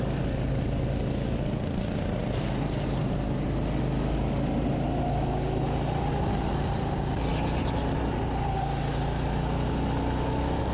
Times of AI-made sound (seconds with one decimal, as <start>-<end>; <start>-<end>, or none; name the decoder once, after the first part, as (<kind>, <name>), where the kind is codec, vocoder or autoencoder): none